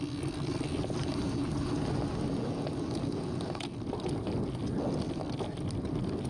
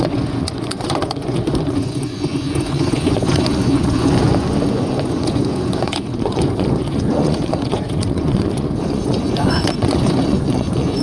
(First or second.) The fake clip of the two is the second